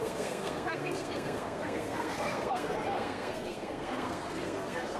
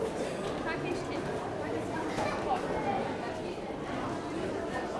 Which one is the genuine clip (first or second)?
second